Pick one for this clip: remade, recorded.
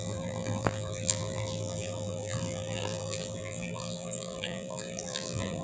remade